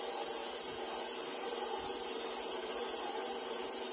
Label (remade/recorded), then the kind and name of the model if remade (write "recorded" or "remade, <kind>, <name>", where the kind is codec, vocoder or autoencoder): recorded